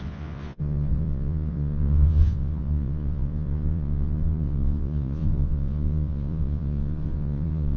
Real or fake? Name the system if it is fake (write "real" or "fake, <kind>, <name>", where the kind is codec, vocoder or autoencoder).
fake, vocoder, Vocos